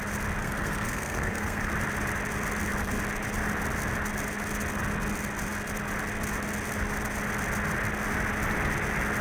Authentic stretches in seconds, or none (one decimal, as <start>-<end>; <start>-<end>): 0.0-0.4; 1.7-9.2